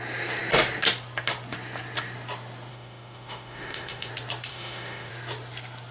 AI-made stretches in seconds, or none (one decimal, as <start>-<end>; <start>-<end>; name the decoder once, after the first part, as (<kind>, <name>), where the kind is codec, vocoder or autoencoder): 2.7-4.1 (autoencoder, DAC-VAE); 4.5-5.1